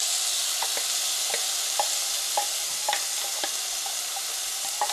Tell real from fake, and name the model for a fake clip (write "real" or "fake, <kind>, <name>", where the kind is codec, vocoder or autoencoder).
real